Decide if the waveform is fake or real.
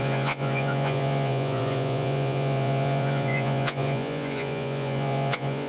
fake